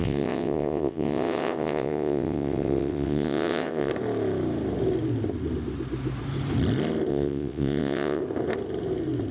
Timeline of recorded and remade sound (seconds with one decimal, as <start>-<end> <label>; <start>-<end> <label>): 0.0-3.9 remade; 3.9-7.1 recorded; 7.1-8.2 remade; 8.2-9.3 recorded